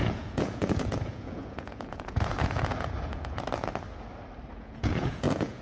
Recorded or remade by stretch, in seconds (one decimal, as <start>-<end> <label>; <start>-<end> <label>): 0.0-3.4 remade; 3.4-4.5 recorded; 4.5-5.6 remade